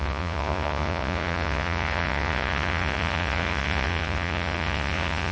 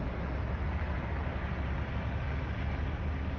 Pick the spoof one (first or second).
first